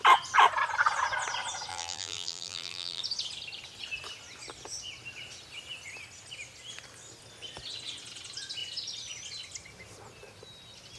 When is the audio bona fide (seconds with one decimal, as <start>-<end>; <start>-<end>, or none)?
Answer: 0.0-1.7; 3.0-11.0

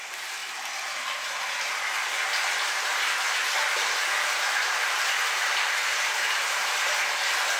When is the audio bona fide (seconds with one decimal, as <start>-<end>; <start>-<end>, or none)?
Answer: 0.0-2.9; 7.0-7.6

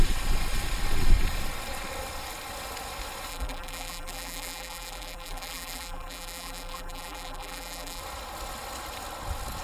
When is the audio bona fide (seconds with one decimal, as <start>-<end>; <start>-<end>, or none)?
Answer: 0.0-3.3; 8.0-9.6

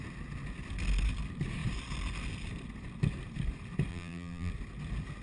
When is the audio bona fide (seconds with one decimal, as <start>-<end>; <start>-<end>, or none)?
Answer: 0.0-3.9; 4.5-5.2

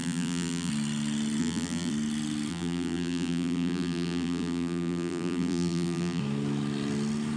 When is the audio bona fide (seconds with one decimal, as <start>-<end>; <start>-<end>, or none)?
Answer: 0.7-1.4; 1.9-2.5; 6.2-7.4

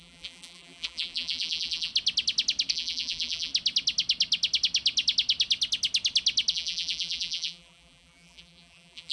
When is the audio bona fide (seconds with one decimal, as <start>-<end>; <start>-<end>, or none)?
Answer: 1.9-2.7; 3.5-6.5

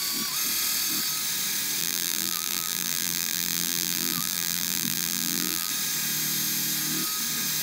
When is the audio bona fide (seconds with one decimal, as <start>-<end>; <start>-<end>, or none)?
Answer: 0.0-1.8; 5.7-7.6